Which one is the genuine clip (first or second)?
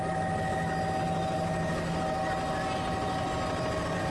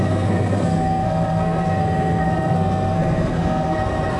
first